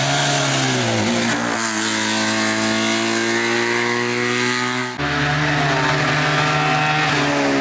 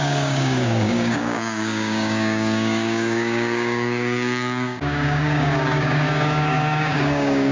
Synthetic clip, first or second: second